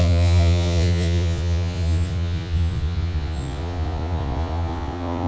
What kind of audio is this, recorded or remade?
remade